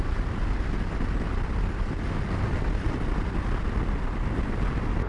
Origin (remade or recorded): recorded